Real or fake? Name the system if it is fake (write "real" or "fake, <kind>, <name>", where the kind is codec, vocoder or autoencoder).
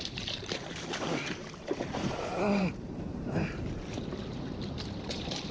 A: fake, vocoder, BigVGAN v2